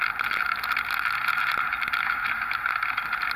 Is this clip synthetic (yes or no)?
no